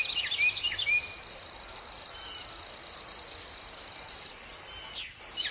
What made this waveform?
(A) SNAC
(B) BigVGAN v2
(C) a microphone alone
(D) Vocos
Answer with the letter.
C